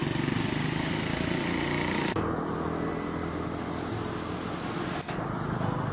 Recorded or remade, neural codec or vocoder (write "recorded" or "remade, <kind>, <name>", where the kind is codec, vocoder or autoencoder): recorded